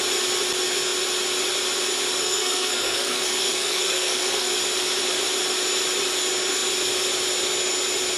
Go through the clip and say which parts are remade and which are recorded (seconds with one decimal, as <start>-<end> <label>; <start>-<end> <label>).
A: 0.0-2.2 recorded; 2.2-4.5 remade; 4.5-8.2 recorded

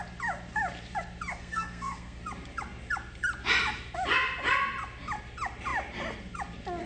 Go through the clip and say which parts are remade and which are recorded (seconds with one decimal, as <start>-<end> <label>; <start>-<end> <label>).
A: 0.0-1.3 recorded; 1.3-2.2 remade; 2.2-6.9 recorded

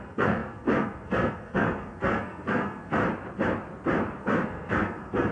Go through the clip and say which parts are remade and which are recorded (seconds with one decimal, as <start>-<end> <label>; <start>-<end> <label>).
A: 0.0-3.0 remade; 3.0-4.2 recorded; 4.2-5.3 remade